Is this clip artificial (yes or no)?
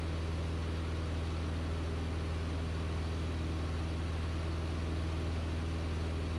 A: no